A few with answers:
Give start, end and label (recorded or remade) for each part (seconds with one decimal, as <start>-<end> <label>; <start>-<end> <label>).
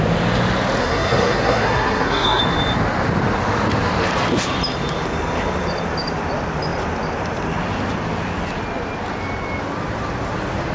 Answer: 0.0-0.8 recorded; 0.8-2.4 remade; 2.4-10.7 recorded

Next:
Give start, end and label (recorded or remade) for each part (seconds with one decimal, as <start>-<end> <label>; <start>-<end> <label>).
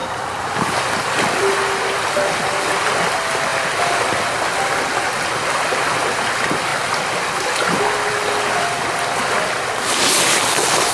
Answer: 0.0-10.9 recorded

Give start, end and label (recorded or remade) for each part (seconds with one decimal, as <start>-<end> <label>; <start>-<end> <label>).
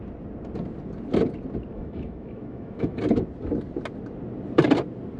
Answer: 0.0-1.7 recorded; 1.7-3.0 remade; 3.0-5.2 recorded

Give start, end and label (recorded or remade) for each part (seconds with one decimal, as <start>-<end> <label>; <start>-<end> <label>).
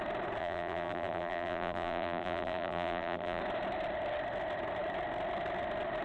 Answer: 0.0-0.4 recorded; 0.4-3.4 remade; 3.4-6.0 recorded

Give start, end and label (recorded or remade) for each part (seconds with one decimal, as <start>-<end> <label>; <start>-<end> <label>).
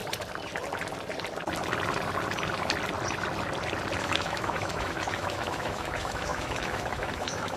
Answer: 0.0-4.0 recorded; 4.0-7.6 remade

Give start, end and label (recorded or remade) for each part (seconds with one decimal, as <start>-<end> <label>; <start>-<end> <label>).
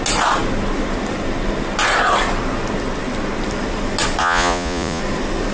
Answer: 0.0-4.2 recorded; 4.2-5.0 remade; 5.0-5.5 recorded